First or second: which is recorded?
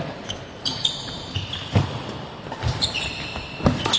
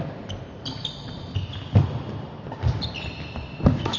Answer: second